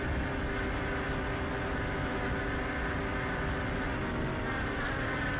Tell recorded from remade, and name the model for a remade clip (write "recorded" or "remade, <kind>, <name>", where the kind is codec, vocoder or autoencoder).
recorded